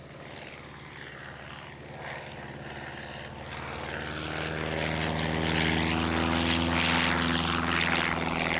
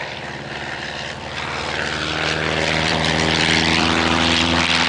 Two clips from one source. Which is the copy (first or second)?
second